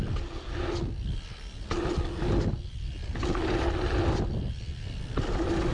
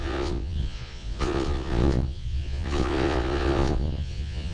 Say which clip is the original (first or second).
first